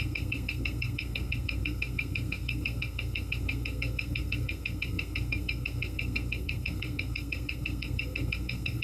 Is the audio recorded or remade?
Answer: remade